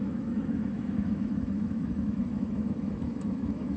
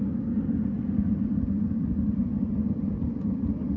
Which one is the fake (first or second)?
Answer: first